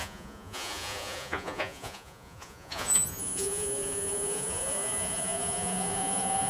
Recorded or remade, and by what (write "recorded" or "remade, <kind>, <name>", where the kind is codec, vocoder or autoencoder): remade, vocoder, Vocos